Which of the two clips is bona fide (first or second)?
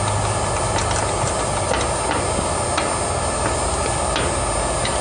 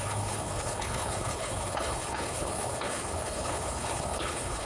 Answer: first